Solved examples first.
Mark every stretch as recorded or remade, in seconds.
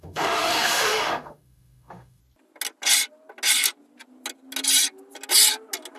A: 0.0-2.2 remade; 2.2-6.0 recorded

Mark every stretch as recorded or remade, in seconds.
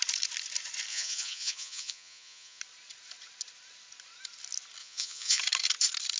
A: 0.0-0.9 recorded; 0.9-2.6 remade; 2.6-4.8 recorded; 4.8-5.4 remade; 5.4-6.2 recorded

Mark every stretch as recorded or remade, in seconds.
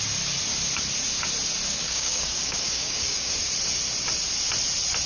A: 0.0-1.8 recorded; 1.8-3.3 remade; 3.3-5.1 recorded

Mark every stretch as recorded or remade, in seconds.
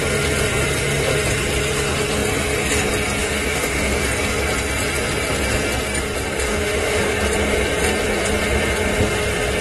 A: 0.0-3.2 recorded; 3.2-4.0 remade; 4.0-6.5 recorded; 6.5-7.0 remade; 7.0-9.6 recorded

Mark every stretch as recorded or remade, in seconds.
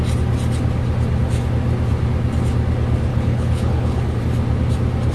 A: 0.0-3.1 recorded; 3.1-4.2 remade; 4.2-5.1 recorded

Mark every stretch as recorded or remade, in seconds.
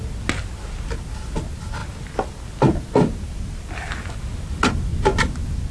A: 0.0-5.7 recorded